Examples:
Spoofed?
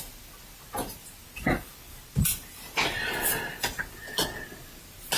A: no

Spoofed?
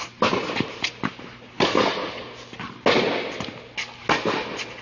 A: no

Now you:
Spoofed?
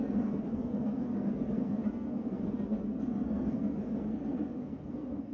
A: yes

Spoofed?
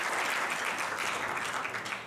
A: no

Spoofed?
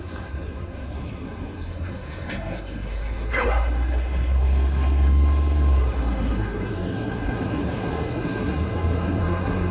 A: yes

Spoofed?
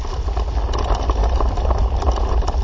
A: no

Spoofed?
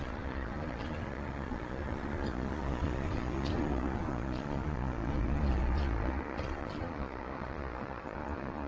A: yes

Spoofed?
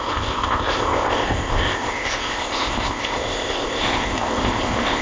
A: yes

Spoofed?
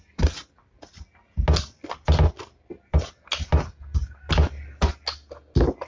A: no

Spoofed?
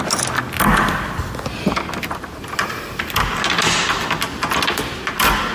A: no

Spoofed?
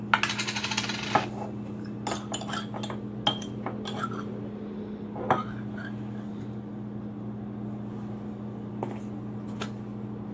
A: no